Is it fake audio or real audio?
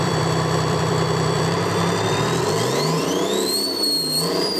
fake